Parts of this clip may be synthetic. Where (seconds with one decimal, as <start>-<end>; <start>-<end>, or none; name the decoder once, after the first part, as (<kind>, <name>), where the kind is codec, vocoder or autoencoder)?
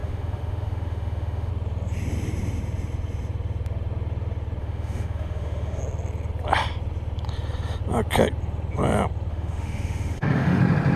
0.0-1.5 (autoencoder, DAC-VAE); 4.6-5.8; 9.3-10.6